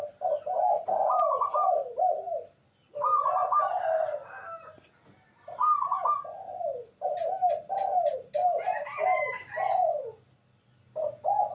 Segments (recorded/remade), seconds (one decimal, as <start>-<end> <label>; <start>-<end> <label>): 0.0-8.4 recorded; 8.4-9.0 remade; 9.0-11.5 recorded